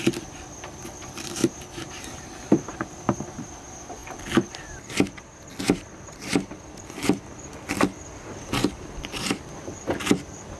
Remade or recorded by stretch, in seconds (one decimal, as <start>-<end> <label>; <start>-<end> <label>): 0.0-1.4 remade; 1.4-2.7 recorded; 2.7-10.6 remade